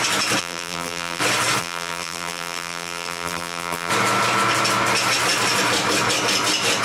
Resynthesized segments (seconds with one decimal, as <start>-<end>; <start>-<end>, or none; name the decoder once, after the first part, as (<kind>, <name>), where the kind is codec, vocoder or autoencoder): 0.4-1.2 (vocoder, BigVGAN v2); 1.6-3.9